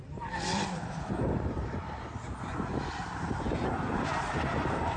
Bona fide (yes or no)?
no